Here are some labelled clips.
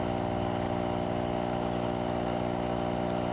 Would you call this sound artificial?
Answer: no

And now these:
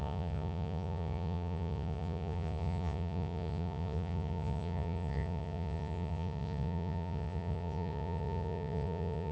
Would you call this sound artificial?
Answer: yes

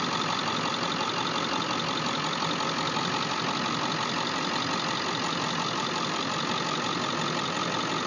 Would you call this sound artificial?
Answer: no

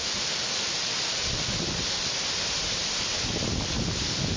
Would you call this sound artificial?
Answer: no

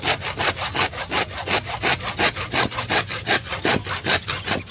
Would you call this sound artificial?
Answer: no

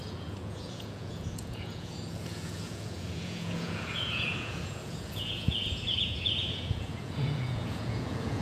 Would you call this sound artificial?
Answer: yes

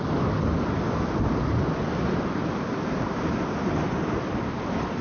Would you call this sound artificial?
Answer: no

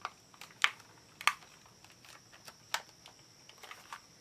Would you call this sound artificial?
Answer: no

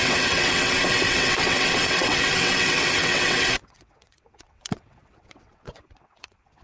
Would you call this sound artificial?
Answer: yes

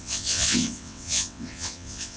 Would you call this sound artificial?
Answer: yes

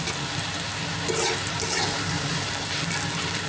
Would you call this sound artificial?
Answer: no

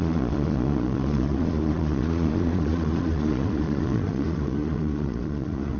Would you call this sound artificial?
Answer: yes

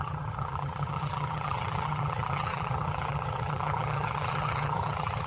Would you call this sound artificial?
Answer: yes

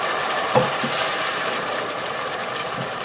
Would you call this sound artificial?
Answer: yes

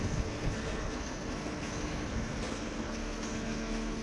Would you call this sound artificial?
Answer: yes